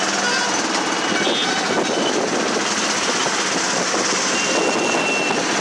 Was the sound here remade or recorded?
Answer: recorded